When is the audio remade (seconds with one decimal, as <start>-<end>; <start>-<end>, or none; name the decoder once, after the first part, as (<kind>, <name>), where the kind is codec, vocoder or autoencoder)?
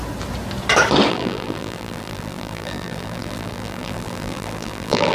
1.1-5.1 (vocoder, BigVGAN v2)